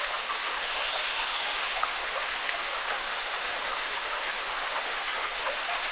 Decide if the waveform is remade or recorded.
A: remade